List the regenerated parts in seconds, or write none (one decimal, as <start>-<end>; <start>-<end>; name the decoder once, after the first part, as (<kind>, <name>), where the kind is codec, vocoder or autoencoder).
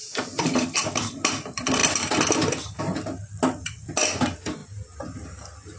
0.0-1.8 (vocoder, BigVGAN v2); 2.8-4.6